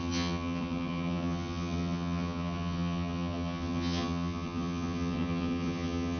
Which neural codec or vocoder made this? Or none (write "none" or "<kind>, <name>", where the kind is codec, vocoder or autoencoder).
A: vocoder, HiFi-GAN